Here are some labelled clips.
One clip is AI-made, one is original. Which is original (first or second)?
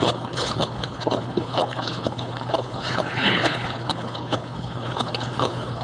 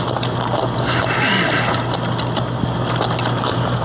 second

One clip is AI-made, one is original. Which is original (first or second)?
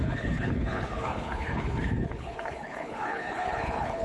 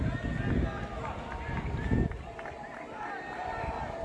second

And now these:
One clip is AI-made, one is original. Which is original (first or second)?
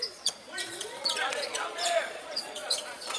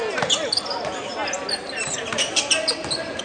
second